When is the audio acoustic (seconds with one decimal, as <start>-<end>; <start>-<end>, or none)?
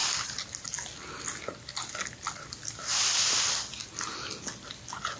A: 0.0-5.2